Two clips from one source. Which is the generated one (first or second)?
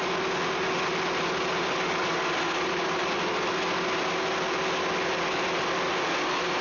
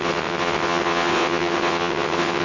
second